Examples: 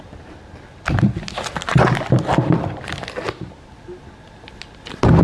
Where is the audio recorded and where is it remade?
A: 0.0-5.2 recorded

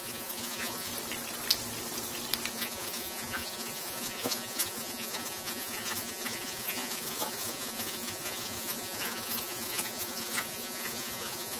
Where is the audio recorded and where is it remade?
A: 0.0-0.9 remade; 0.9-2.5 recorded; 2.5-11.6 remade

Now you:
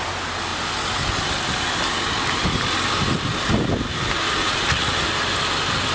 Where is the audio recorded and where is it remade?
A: 0.0-4.4 recorded; 4.4-4.9 remade; 4.9-5.9 recorded